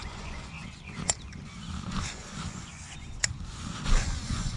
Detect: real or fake fake